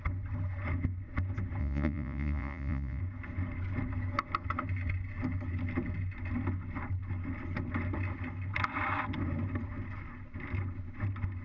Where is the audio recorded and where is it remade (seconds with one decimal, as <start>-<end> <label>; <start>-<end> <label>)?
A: 0.0-1.6 recorded; 1.6-3.0 remade; 3.0-11.4 recorded